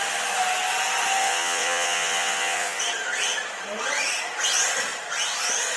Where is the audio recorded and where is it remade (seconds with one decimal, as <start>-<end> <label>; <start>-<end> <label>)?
0.0-1.2 recorded; 1.2-2.8 remade; 2.8-5.8 recorded